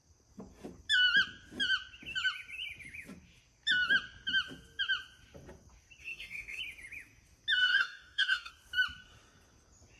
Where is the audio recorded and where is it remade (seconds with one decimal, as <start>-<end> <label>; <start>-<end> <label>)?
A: 0.0-6.0 recorded; 6.0-6.6 remade; 6.6-7.6 recorded; 7.6-8.5 remade; 8.5-10.0 recorded